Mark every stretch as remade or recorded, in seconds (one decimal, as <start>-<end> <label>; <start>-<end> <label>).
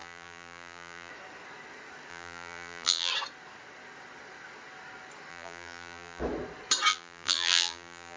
0.0-1.1 remade; 1.1-2.1 recorded; 2.1-3.1 remade; 3.1-5.3 recorded; 5.3-6.2 remade; 6.2-6.9 recorded; 6.9-8.2 remade